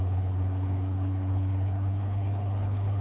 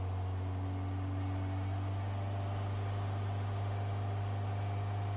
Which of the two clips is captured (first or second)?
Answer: second